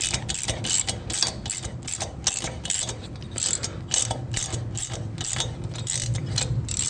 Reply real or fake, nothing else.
real